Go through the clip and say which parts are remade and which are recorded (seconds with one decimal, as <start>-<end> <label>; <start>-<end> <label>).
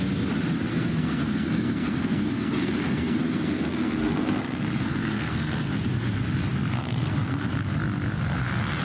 0.0-0.7 recorded; 0.7-5.7 remade; 5.7-6.8 recorded; 6.8-7.5 remade; 7.5-8.8 recorded